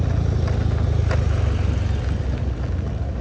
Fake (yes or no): no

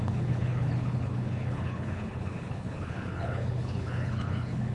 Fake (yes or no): yes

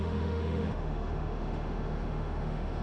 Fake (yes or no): yes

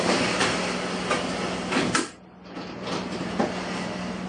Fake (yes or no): yes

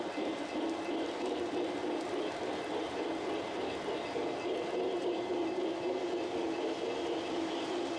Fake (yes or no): no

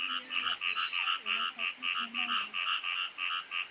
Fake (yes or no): no